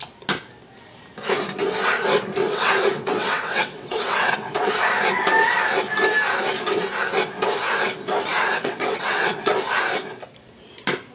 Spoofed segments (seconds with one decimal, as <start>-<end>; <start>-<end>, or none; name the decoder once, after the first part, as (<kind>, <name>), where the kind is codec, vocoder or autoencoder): 2.4-4.7 (vocoder, WaveNeXt); 8.3-9.5